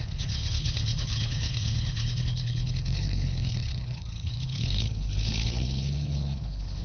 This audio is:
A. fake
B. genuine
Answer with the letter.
A